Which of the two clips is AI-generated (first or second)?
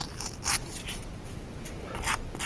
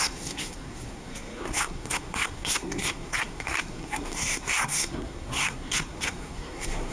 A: second